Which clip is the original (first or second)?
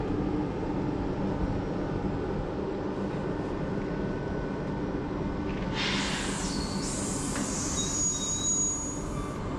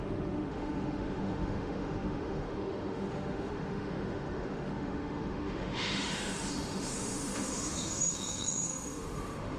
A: first